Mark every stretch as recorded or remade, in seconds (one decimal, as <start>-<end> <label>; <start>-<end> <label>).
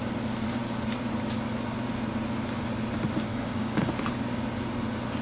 0.0-3.3 recorded; 3.3-3.9 remade; 3.9-5.2 recorded